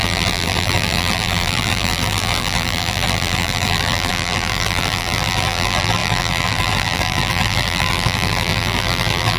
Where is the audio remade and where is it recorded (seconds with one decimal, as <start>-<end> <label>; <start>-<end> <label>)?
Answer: 0.0-9.4 remade